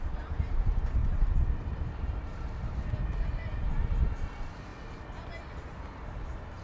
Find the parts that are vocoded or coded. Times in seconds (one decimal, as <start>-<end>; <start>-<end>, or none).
0.0-1.0; 1.9-4.7; 5.3-6.6